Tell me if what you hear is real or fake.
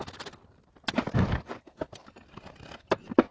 real